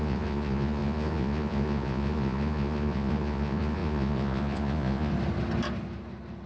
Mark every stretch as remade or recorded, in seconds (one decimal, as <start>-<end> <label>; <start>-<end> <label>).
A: 0.0-5.1 remade; 5.1-6.5 recorded